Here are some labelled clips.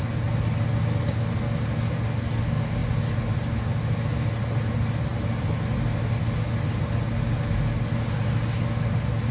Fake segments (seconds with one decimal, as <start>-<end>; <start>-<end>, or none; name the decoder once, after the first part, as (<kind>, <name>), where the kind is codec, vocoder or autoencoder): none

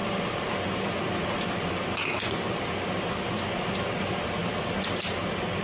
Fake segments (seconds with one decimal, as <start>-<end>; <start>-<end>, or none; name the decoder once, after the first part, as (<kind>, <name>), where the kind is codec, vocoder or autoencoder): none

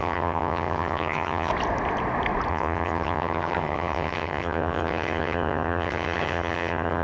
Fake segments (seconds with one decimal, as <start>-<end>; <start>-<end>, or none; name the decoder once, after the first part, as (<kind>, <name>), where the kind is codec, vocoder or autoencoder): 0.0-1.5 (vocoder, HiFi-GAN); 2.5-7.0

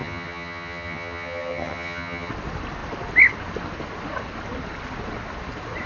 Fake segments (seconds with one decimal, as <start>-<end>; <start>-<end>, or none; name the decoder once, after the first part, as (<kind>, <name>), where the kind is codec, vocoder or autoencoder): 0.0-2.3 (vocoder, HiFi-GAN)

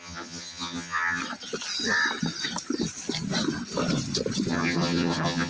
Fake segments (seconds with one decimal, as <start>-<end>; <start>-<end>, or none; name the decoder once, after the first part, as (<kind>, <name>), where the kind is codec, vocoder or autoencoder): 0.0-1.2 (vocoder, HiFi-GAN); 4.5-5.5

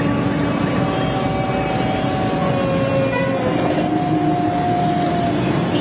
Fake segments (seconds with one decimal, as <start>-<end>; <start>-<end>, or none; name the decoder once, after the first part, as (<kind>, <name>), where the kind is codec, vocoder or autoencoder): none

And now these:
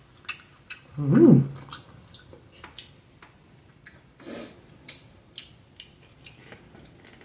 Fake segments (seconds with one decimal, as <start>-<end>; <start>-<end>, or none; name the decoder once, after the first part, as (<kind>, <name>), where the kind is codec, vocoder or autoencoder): none